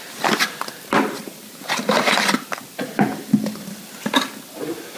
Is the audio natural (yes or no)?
yes